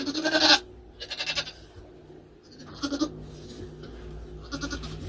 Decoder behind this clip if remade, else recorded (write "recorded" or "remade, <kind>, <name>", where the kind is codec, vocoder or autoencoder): recorded